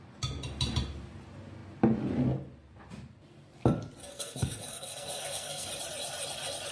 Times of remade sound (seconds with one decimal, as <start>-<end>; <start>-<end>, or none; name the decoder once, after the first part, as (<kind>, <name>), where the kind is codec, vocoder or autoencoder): 4.0-5.7 (codec, SNAC)